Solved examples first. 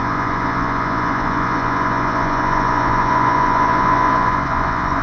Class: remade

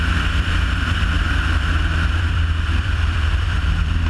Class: remade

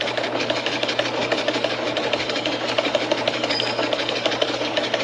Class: remade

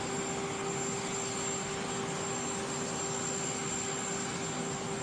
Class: recorded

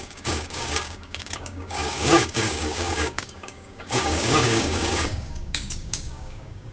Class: remade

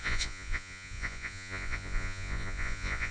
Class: remade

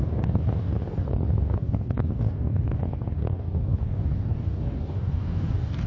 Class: remade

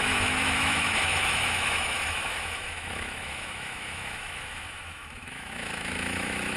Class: remade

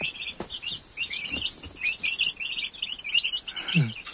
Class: recorded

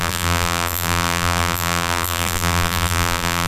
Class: remade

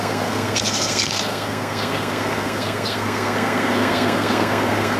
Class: remade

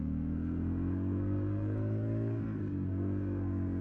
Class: remade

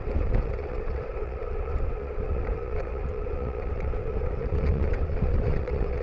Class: remade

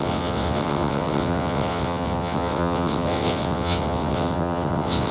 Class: remade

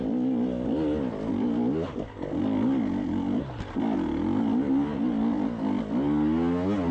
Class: recorded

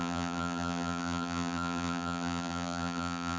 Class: remade